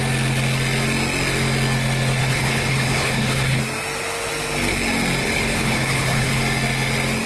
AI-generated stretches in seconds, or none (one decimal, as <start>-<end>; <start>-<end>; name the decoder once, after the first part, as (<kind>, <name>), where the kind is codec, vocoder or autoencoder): 2.2-3.6 (codec, HILCodec); 5.2-6.4

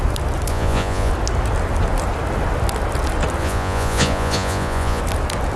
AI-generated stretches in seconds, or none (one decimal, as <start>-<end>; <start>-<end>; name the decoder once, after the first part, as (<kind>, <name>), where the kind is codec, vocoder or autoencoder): 0.5-1.1 (vocoder, Vocos); 3.4-5.0